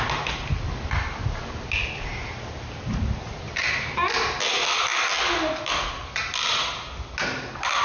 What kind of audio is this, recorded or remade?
recorded